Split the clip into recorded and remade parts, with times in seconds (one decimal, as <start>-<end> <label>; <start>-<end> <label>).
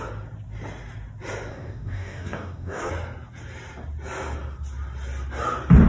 0.0-1.5 recorded; 1.5-2.9 remade; 2.9-5.9 recorded